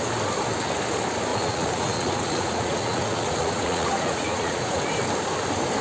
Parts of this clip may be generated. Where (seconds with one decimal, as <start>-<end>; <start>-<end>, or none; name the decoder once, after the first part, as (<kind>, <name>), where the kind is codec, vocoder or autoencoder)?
1.3-4.8 (vocoder, Vocos)